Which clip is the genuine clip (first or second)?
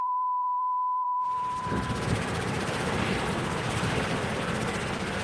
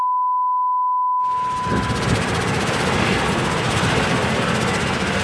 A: second